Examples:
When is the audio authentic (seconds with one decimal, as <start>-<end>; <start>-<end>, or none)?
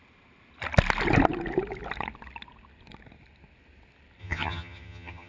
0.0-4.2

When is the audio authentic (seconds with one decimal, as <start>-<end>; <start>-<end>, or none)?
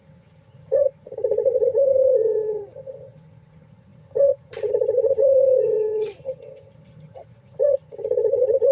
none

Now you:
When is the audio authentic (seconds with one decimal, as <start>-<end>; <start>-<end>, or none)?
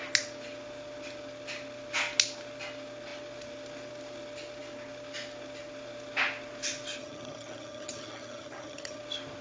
0.0-7.0; 9.0-9.4